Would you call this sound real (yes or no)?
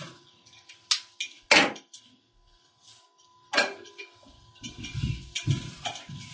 yes